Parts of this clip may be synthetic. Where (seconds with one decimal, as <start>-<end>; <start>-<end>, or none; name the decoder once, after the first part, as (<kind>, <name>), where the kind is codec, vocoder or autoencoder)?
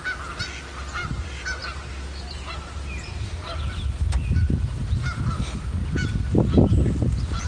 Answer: 1.0-3.2 (vocoder, BigVGAN v2)